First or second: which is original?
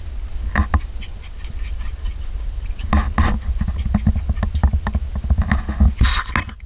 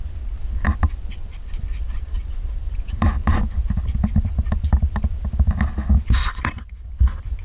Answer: first